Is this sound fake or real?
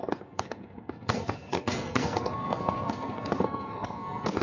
fake